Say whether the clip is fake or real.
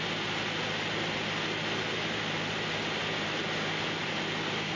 real